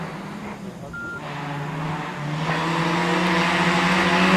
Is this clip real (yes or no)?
yes